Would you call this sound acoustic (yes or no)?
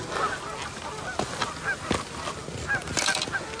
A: yes